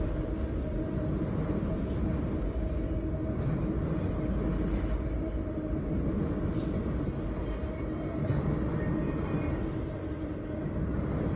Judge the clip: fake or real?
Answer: real